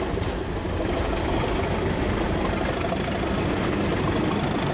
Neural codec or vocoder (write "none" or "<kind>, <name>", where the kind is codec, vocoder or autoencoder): none